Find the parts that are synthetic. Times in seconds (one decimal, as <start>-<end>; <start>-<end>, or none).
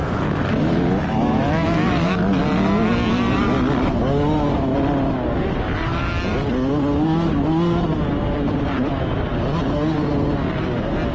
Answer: 0.0-2.4